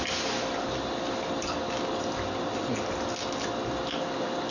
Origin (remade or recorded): recorded